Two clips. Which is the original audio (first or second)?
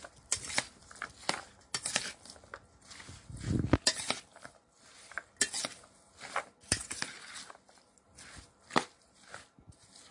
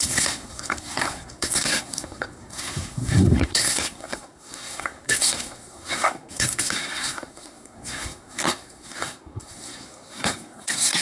first